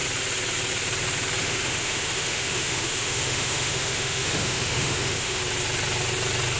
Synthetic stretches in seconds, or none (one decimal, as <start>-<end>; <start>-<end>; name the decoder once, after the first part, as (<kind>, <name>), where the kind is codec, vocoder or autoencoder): 1.4-5.4 (autoencoder, DAC-VAE)